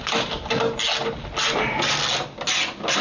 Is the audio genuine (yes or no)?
yes